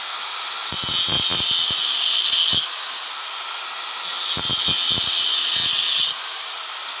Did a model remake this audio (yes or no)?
no